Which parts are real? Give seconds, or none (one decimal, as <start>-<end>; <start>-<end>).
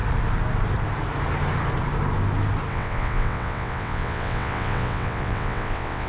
0.0-2.7